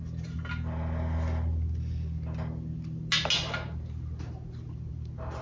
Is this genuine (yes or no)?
yes